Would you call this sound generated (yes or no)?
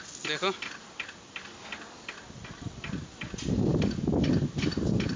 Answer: no